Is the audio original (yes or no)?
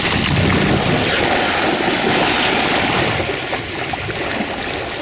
yes